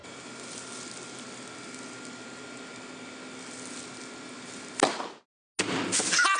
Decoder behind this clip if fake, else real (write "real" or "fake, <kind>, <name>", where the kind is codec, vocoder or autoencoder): real